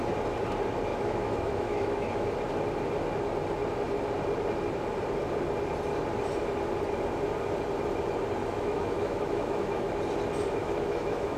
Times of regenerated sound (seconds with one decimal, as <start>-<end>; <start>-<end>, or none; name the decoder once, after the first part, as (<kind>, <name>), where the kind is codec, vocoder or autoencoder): 0.9-2.3 (autoencoder, DAC-VAE); 8.4-10.0; 10.6-11.4